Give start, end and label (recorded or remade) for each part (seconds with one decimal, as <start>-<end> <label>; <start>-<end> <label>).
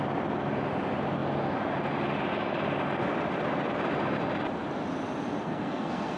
0.0-5.4 recorded; 5.4-6.2 remade